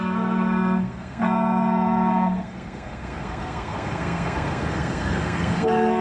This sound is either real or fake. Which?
fake